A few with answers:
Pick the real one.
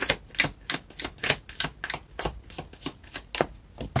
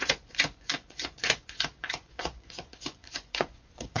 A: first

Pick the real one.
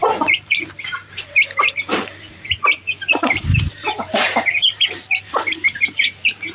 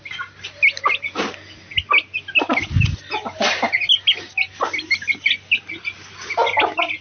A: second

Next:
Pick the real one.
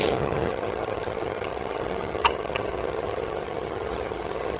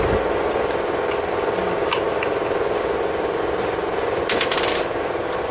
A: second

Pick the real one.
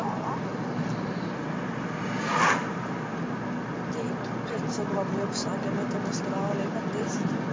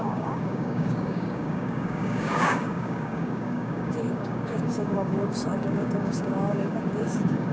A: first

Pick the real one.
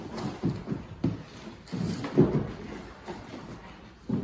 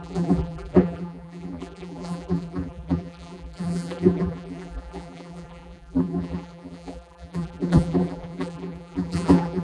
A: first